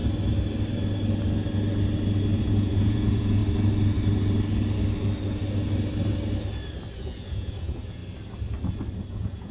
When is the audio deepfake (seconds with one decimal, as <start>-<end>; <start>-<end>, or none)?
2.4-3.4; 7.0-8.0; 9.1-9.5